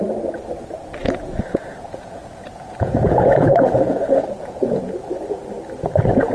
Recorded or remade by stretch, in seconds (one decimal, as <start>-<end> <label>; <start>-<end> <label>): 0.0-1.0 recorded; 1.0-4.8 remade; 4.8-6.3 recorded